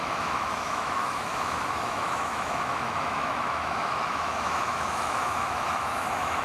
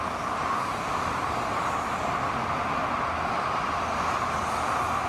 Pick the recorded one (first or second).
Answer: second